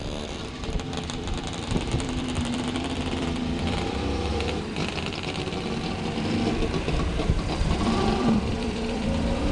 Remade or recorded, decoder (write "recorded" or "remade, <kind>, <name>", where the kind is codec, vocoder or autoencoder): remade, vocoder, BigVGAN v2